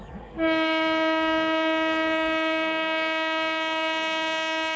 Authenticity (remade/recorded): remade